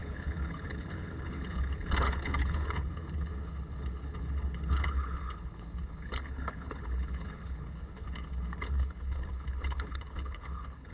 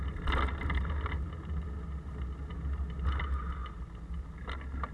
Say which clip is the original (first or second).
second